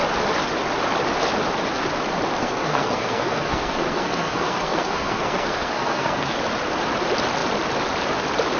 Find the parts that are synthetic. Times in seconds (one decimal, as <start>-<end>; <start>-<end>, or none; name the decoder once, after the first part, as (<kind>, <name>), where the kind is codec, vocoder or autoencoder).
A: 2.4-6.4 (codec, SNAC)